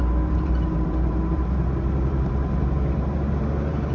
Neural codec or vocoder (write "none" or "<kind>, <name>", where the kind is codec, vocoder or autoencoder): vocoder, BigVGAN v2